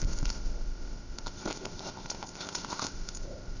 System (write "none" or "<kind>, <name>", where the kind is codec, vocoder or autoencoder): codec, ZipCodec